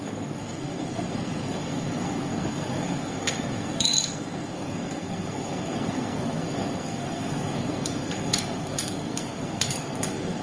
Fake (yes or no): yes